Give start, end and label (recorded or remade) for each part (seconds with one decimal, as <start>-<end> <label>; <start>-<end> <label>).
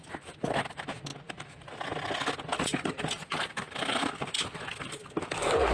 0.0-5.7 recorded